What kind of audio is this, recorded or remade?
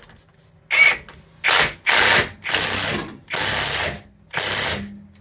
recorded